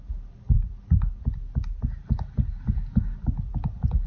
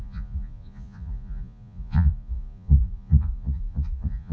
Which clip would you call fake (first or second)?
second